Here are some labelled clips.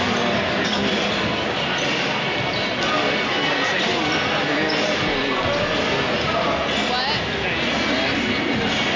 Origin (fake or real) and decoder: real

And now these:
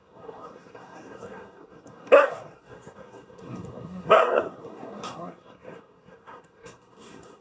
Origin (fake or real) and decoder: fake, codec, SNAC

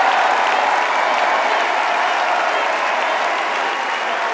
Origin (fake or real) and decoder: real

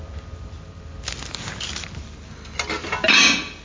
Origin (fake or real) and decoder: real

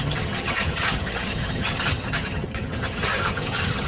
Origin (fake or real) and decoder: fake, vocoder, HiFi-GAN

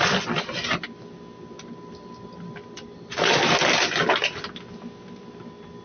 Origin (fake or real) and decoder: real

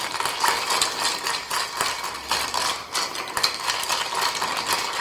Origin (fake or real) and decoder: real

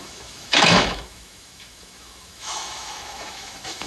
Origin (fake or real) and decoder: fake, autoencoder, DAC-VAE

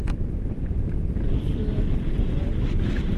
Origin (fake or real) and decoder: real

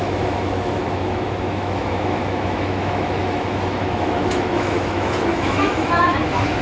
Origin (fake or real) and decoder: fake, autoencoder, DAC-VAE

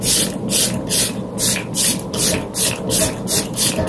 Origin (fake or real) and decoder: real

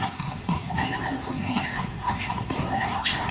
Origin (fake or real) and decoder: fake, codec, SNAC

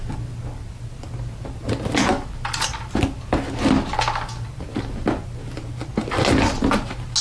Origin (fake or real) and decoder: real